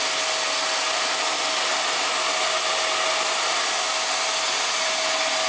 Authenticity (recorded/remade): recorded